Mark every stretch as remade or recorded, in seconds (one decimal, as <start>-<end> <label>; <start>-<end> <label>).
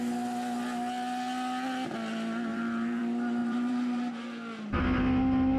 0.0-2.5 recorded; 2.5-3.0 remade; 3.0-3.4 recorded; 3.4-4.2 remade; 4.2-5.6 recorded